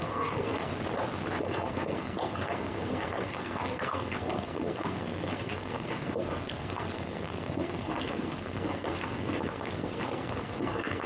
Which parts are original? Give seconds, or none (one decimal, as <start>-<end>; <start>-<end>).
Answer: 0.7-1.4